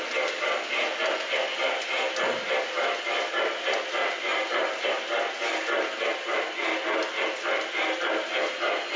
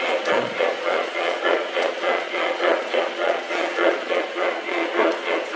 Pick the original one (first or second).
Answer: first